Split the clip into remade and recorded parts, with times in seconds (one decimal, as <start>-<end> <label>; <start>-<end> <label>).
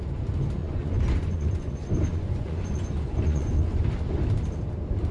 0.0-0.6 recorded; 0.6-1.7 remade; 1.7-2.1 recorded; 2.1-3.8 remade; 3.8-5.1 recorded